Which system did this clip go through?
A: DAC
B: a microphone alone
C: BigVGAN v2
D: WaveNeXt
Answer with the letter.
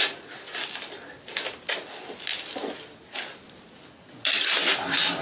B